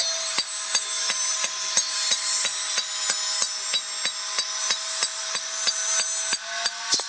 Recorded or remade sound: recorded